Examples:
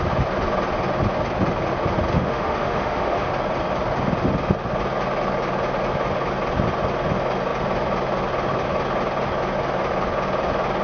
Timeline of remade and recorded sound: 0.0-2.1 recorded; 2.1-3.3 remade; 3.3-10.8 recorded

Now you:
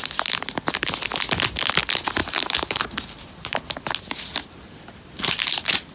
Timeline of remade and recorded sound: 0.0-2.2 recorded; 2.2-3.6 remade; 3.6-5.9 recorded

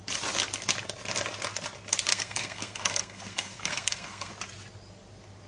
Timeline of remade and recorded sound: 0.0-2.1 recorded; 2.1-4.3 remade; 4.3-5.5 recorded

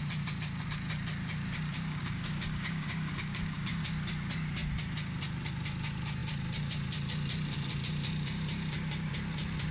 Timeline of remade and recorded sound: 0.0-1.7 recorded; 1.7-3.8 remade; 3.8-9.7 recorded

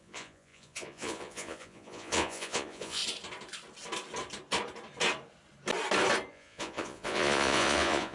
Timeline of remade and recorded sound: 0.0-3.0 remade; 3.0-6.3 recorded; 6.3-8.1 remade

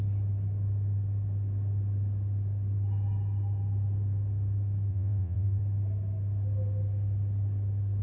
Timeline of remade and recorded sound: 0.0-4.9 recorded; 4.9-5.6 remade; 5.6-8.0 recorded